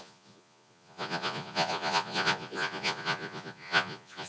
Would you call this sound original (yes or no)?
no